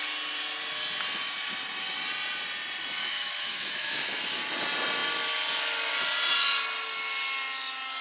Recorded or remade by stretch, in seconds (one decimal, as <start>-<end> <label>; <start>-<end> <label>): 0.0-3.0 recorded; 3.0-4.4 remade; 4.4-8.0 recorded